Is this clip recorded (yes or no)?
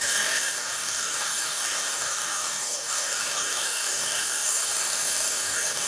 no